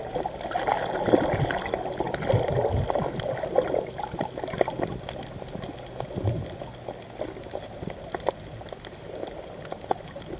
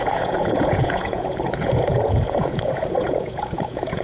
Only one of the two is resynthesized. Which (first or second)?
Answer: second